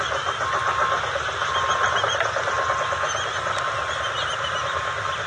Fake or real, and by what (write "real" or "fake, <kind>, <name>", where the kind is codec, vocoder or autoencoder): real